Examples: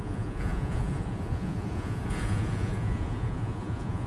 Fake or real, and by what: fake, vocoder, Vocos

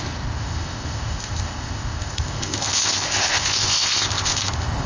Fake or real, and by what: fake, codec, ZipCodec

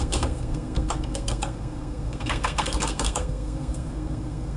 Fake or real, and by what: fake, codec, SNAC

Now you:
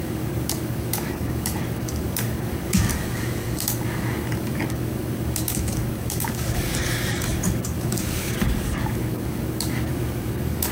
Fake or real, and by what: fake, codec, DAC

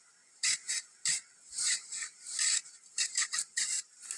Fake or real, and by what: fake, vocoder, BigVGAN v2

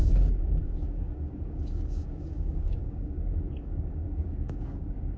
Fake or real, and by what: fake, codec, DAC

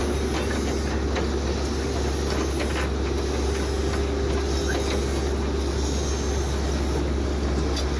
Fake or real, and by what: real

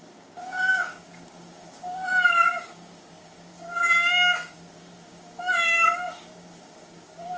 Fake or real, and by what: fake, codec, DAC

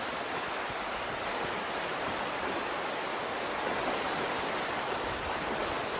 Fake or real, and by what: real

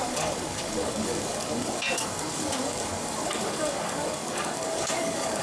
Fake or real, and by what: fake, codec, DAC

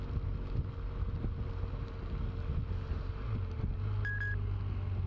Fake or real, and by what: real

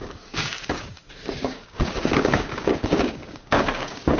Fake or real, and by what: fake, codec, DAC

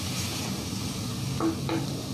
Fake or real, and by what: real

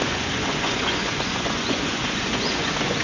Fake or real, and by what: fake, vocoder, Vocos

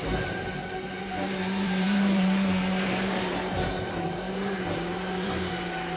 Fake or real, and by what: fake, vocoder, BigVGAN v2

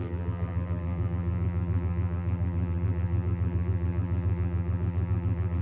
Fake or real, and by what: fake, vocoder, BigVGAN v2